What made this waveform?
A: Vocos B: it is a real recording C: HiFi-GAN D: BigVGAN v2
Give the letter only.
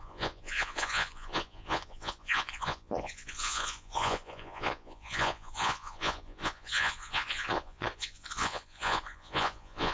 A